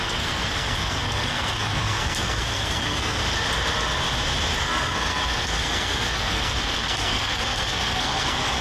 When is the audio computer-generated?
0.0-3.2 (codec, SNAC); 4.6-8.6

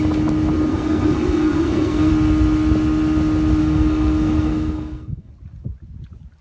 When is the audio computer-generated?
0.7-2.1 (codec, SNAC); 3.6-5.3

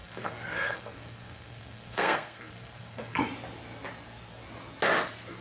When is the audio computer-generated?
0.0-3.2 (codec, SNAC)

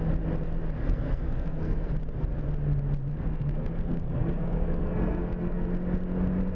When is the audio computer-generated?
0.8-1.9 (codec, SNAC); 3.1-5.7

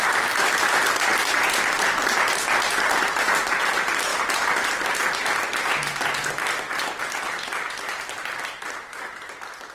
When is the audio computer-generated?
none

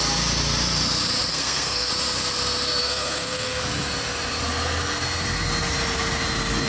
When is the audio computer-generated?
1.3-1.9 (codec, SNAC); 2.8-3.6

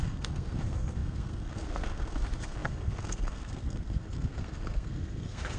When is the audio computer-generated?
0.0-5.6 (codec, SNAC)

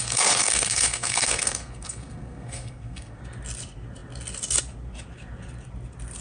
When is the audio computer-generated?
0.0-3.2 (codec, SNAC)